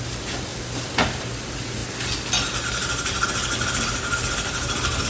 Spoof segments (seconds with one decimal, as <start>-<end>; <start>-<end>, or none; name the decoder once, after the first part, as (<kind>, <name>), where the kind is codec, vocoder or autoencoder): none